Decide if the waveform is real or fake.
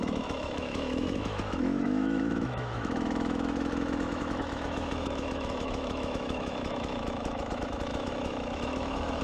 fake